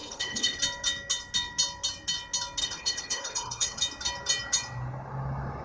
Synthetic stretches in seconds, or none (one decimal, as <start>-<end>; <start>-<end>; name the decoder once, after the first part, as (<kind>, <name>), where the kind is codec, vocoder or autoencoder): 0.0-0.6 (codec, HILCodec); 2.6-3.8